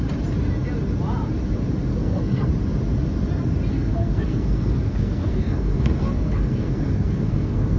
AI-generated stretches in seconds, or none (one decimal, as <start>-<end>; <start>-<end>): 1.9-2.5; 3.7-7.8